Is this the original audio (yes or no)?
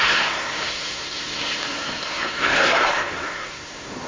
no